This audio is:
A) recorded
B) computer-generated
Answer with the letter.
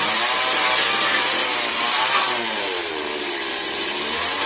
B